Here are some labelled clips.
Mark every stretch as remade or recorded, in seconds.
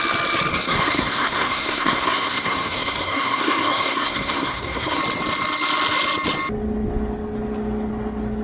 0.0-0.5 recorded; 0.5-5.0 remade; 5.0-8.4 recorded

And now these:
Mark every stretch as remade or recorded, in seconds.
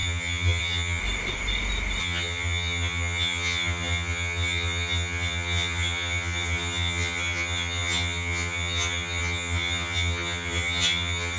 0.0-1.0 remade; 1.0-2.0 recorded; 2.0-11.4 remade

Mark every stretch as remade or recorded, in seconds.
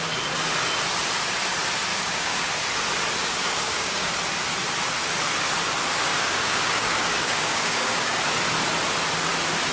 0.0-1.9 recorded; 1.9-2.5 remade; 2.5-3.2 recorded; 3.2-4.1 remade; 4.1-6.1 recorded; 6.1-8.2 remade; 8.2-9.7 recorded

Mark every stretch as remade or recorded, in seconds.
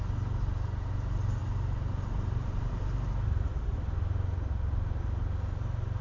0.0-6.0 recorded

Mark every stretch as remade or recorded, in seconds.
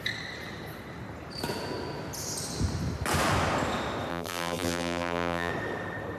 0.0-4.1 recorded; 4.1-5.5 remade; 5.5-6.2 recorded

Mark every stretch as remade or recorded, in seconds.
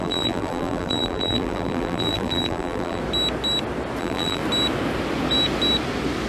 0.0-3.0 remade; 3.0-4.0 recorded; 4.0-4.4 remade; 4.4-6.3 recorded